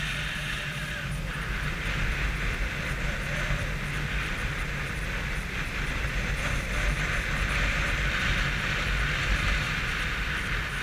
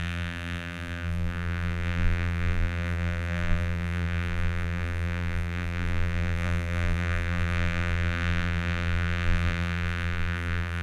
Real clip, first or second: first